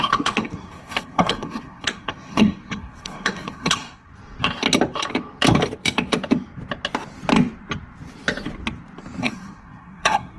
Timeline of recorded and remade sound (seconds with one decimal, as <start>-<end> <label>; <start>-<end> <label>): 0.0-4.1 remade; 4.1-9.2 recorded; 9.2-10.4 remade